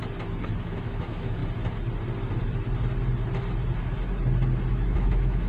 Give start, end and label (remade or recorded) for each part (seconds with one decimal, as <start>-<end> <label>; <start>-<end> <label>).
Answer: 0.0-0.6 recorded; 0.6-1.4 remade; 1.4-4.7 recorded; 4.7-5.5 remade